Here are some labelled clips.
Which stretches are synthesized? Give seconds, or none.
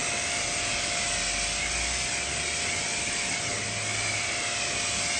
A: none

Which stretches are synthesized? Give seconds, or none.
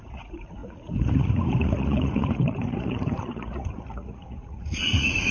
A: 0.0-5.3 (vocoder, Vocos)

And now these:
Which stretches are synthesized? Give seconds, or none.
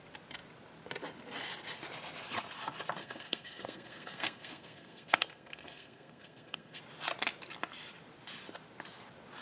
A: 3.0-6.8 (codec, SNAC)